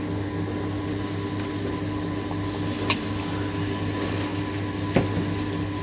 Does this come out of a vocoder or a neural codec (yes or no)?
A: no